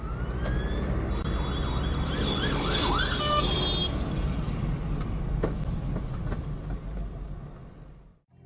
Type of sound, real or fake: real